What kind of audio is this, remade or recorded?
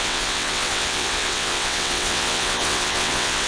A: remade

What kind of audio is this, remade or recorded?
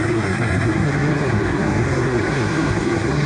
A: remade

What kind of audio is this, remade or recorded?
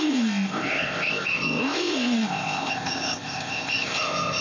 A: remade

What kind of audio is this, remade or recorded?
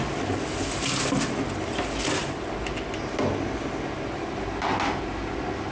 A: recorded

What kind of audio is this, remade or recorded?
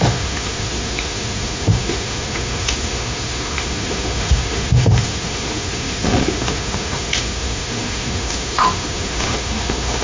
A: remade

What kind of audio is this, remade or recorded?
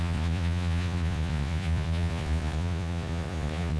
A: remade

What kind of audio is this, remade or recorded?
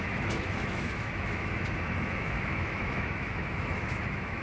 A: remade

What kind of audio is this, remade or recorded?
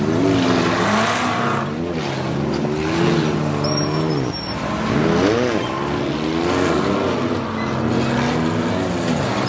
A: recorded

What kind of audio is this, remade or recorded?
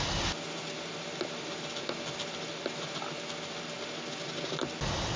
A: recorded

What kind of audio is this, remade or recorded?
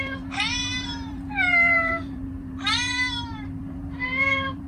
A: remade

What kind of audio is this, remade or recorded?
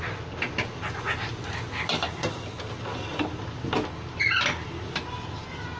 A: recorded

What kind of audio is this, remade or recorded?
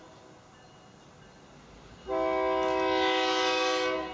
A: recorded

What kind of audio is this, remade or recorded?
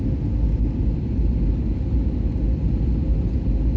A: recorded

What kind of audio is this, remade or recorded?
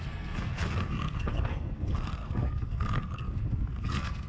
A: remade